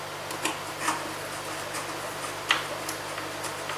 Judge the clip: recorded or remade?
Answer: recorded